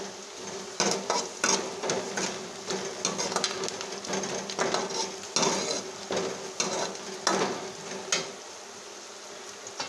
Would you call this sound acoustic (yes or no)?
yes